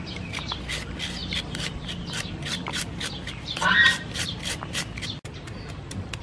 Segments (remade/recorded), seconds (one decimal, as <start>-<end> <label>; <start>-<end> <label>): 0.0-1.2 recorded; 1.2-4.5 remade; 4.5-6.2 recorded